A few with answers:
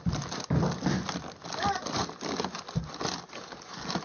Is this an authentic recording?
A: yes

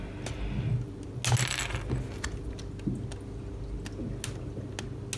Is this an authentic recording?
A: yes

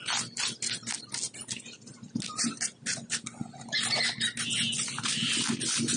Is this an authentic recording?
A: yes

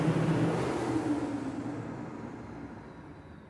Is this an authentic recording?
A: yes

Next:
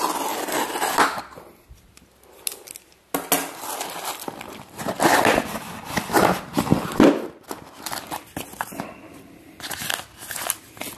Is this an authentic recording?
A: yes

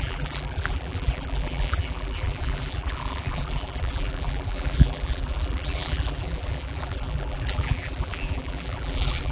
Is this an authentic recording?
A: no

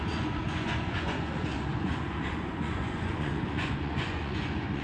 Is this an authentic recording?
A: no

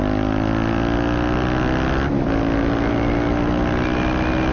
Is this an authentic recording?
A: yes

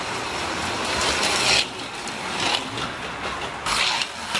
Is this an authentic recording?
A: yes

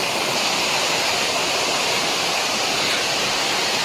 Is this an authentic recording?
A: yes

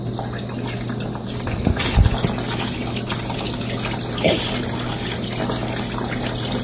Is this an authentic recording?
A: yes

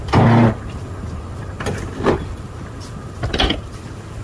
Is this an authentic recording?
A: yes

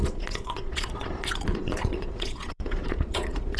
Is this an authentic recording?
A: no